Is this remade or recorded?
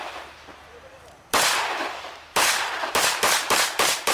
remade